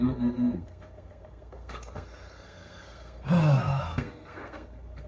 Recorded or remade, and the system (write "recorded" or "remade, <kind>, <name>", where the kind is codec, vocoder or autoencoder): remade, codec, SNAC